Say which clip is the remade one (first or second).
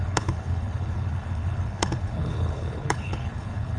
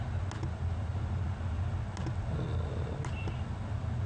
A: first